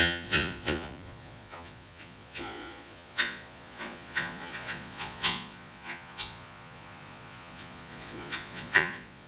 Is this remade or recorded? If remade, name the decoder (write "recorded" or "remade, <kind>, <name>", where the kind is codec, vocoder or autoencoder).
remade, vocoder, Vocos